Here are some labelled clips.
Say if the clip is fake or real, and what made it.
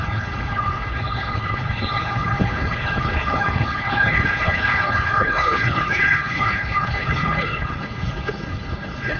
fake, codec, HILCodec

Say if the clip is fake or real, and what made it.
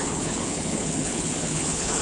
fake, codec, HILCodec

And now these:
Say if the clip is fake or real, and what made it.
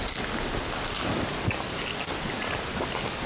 real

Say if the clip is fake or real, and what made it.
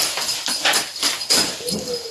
real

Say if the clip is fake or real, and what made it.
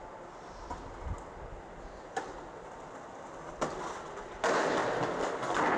real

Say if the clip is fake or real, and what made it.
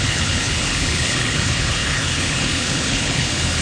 fake, codec, HILCodec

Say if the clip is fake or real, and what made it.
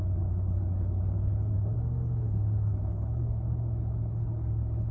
fake, codec, HILCodec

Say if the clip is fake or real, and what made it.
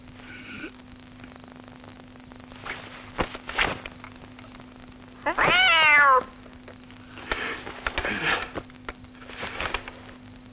real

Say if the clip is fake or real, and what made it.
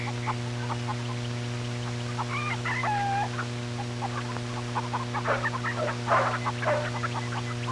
real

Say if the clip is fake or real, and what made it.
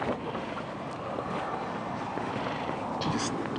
real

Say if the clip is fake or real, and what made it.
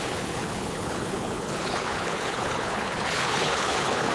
fake, codec, HILCodec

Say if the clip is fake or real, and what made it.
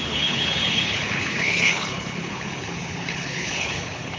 fake, codec, HILCodec